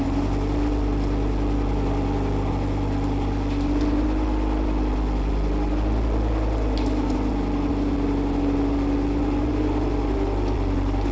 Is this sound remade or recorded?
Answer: recorded